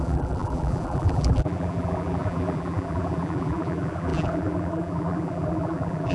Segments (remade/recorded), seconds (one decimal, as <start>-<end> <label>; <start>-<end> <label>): 0.0-6.1 remade